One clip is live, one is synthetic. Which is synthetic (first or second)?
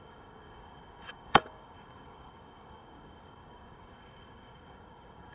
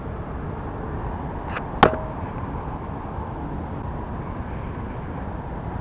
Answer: first